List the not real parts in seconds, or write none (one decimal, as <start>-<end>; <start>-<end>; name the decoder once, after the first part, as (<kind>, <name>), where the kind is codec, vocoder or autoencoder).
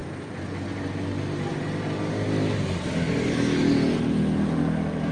none